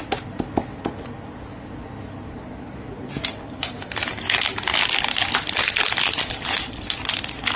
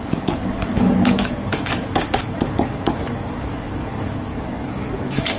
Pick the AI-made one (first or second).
second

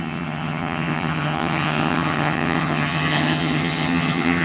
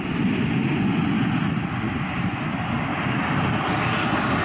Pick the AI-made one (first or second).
first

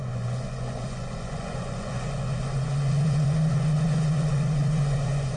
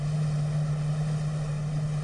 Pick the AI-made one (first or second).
first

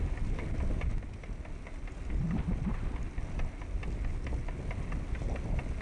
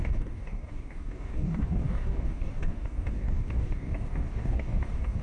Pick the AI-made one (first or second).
second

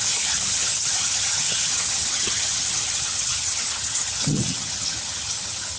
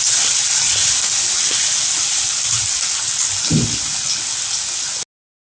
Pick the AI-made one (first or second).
first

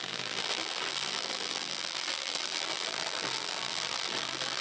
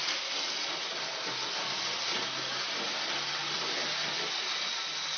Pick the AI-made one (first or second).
first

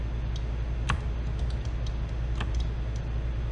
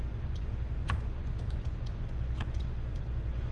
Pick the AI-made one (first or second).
second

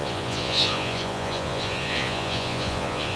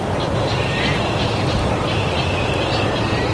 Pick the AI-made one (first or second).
first